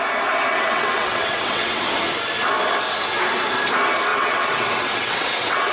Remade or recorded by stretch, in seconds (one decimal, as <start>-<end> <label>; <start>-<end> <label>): 0.0-0.5 recorded; 0.5-1.8 remade; 1.8-4.1 recorded; 4.1-5.7 remade